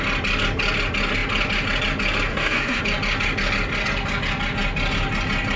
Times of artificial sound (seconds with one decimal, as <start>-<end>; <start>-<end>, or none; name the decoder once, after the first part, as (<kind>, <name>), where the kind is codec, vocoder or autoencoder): 2.3-2.8 (codec, SNAC)